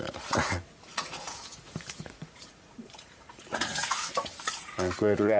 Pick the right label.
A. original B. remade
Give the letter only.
B